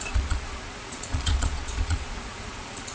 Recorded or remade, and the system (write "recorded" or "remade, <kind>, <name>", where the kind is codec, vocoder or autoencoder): remade, vocoder, Vocos